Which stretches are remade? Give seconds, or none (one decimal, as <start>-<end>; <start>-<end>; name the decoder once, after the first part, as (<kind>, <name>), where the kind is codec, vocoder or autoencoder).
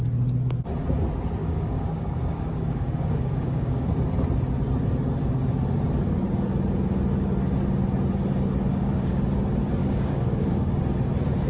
1.4-3.9 (codec, DAC); 8.7-9.2; 9.8-10.8